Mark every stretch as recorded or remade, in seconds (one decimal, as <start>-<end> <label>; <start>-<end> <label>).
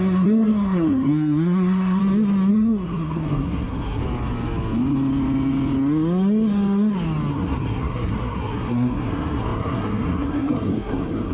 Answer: 0.0-2.0 remade; 2.0-2.5 recorded; 2.5-4.0 remade; 4.0-7.3 recorded; 7.3-11.3 remade